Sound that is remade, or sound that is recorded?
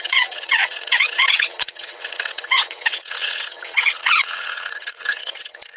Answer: remade